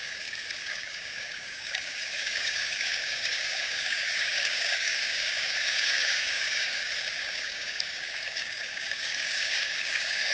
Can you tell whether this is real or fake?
fake